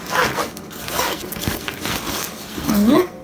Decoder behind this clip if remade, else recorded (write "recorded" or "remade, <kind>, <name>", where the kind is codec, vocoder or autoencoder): remade, codec, SNAC